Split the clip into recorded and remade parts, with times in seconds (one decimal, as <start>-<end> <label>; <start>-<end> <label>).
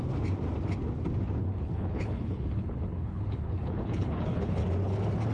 0.0-1.4 recorded; 1.4-4.6 remade; 4.6-5.3 recorded